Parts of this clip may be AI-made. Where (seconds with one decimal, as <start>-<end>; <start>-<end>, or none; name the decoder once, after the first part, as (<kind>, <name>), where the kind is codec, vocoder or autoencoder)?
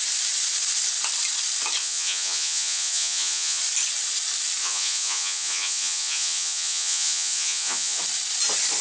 1.8-3.6 (vocoder, Vocos); 4.6-8.0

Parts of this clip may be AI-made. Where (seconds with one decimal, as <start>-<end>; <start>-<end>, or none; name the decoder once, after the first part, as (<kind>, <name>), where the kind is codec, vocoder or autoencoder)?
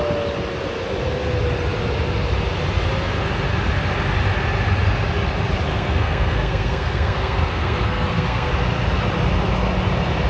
5.7-8.5 (codec, SNAC)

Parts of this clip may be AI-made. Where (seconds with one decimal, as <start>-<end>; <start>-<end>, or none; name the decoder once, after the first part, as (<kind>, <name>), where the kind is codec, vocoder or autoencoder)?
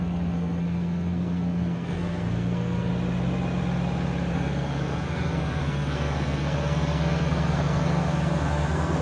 0.0-2.9 (codec, SNAC); 4.3-9.0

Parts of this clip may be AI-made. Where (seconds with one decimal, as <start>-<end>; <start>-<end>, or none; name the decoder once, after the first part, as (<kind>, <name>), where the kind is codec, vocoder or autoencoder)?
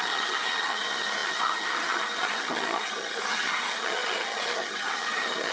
0.0-5.5 (vocoder, HiFi-GAN)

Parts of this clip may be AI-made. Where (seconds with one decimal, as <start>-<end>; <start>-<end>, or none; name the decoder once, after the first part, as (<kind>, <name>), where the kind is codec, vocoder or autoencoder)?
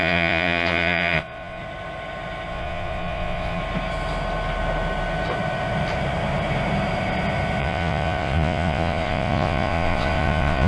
0.0-1.6 (vocoder, Vocos); 2.5-3.6; 7.6-10.7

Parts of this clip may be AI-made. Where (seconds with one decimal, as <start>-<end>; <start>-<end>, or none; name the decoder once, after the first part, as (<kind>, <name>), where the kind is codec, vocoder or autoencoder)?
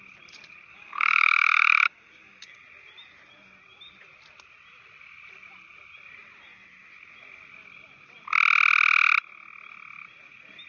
0.7-2.6 (codec, DAC)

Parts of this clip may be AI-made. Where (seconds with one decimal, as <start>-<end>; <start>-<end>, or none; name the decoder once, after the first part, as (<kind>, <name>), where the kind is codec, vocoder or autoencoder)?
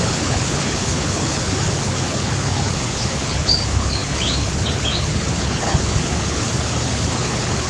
0.0-7.7 (codec, HILCodec)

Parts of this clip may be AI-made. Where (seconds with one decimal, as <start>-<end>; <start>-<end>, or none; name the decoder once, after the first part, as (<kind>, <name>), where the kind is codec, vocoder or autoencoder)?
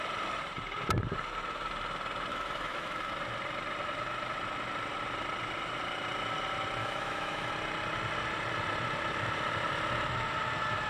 2.3-3.1 (autoencoder, DAC-VAE); 6.8-7.5